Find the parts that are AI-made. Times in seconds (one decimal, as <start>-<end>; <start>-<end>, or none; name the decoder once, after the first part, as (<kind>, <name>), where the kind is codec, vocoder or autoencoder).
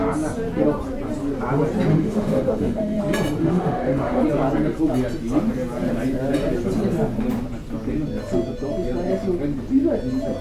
1.9-3.0 (autoencoder, DAC-VAE); 3.4-4.2